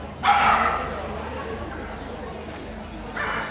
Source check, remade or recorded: recorded